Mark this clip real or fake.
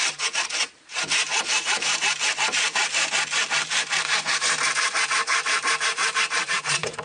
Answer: fake